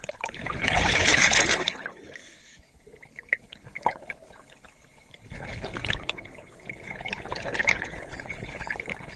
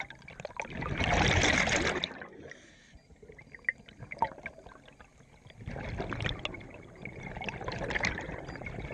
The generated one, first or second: first